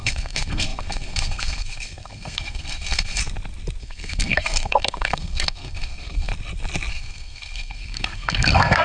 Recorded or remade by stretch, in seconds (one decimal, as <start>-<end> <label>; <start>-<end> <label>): 0.0-3.2 remade; 3.2-3.8 recorded; 3.8-6.3 remade; 6.3-6.9 recorded; 6.9-8.8 remade